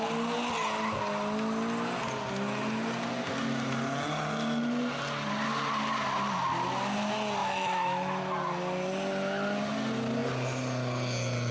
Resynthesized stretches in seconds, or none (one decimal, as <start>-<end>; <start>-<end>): 7.4-8.2